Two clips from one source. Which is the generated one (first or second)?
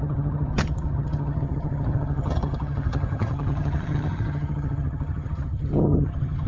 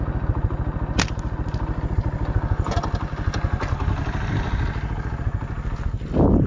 first